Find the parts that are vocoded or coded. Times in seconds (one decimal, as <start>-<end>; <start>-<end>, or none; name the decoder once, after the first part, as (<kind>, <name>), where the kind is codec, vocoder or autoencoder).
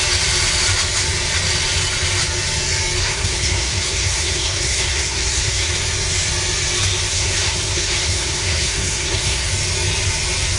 3.0-5.7 (codec, SNAC); 7.1-9.5